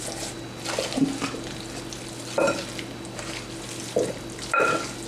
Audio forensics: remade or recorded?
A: recorded